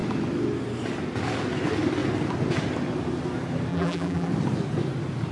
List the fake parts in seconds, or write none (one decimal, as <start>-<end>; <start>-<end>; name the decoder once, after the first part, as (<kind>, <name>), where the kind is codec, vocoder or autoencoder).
3.7-4.3 (vocoder, BigVGAN v2)